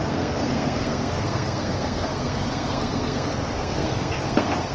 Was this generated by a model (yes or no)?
yes